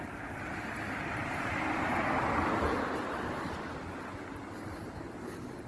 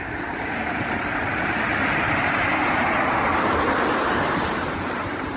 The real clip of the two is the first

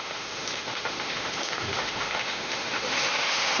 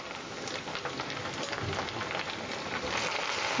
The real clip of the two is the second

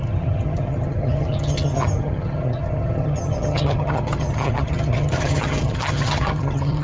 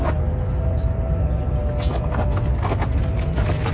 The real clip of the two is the second